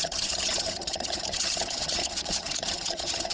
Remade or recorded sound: remade